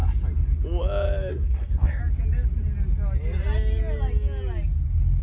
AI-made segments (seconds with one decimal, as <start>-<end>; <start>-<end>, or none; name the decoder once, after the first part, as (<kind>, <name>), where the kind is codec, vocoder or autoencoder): 1.3-2.0 (codec, SNAC)